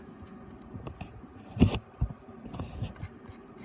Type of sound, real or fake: real